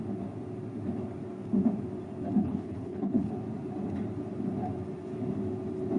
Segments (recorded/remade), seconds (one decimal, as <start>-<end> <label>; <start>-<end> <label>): 0.0-2.4 recorded; 2.4-3.3 remade; 3.3-6.0 recorded